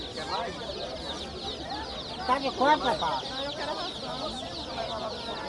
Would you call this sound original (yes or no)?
yes